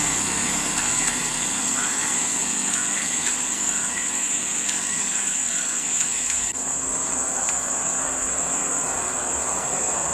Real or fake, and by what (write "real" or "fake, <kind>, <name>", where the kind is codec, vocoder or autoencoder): fake, codec, SNAC